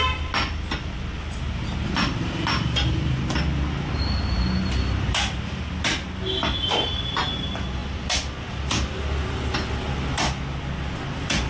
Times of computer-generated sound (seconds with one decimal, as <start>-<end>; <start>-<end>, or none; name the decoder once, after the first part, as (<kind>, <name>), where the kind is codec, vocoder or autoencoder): none